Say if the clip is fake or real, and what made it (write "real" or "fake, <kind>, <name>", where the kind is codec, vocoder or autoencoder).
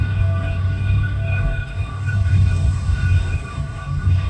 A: fake, codec, DAC